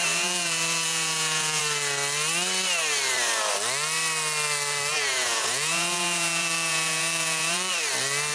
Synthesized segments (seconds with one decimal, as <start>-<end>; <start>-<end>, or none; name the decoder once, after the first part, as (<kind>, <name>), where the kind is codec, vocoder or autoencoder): 0.0-1.6 (vocoder, Vocos); 4.9-7.7